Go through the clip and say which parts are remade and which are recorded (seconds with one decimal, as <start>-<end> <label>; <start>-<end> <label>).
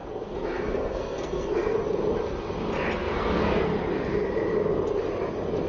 0.0-1.8 remade; 1.8-3.0 recorded; 3.0-3.7 remade; 3.7-5.7 recorded